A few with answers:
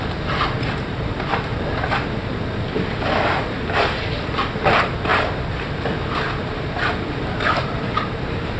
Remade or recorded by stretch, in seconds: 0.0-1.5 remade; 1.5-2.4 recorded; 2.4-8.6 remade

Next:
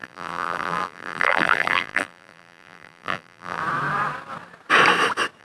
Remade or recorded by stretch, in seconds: 0.0-3.6 remade; 3.6-5.4 recorded